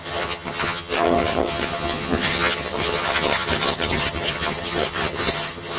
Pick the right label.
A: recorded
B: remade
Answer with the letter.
B